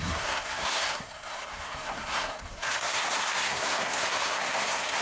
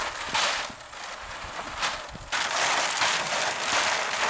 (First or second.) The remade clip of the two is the first